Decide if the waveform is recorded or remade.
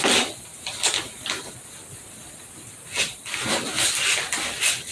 recorded